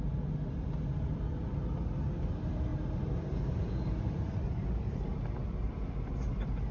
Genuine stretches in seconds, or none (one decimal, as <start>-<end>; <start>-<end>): 0.0-2.7